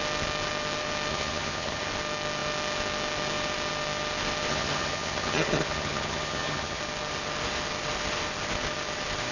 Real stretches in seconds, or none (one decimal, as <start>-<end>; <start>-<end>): 0.0-1.1; 1.8-4.5; 6.8-9.3